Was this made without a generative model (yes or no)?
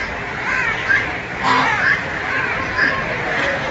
no